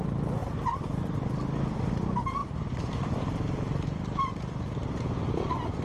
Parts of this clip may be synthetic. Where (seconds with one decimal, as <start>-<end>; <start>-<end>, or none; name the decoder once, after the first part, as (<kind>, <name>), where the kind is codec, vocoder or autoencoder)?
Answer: none